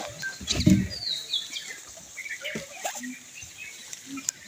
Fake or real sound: real